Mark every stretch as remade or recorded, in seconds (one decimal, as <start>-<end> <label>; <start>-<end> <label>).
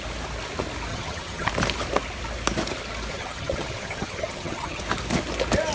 0.0-0.9 recorded; 0.9-1.5 remade; 1.5-3.1 recorded; 3.1-4.8 remade; 4.8-5.7 recorded